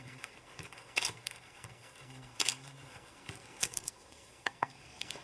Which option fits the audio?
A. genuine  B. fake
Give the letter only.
B